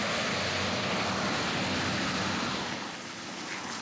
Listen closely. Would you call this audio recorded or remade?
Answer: recorded